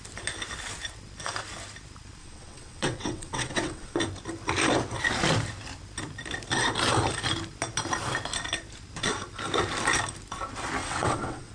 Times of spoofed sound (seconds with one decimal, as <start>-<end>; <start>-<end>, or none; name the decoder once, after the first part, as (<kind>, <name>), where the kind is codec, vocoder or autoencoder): 2.2-4.0 (vocoder, WaveNeXt); 10.8-11.5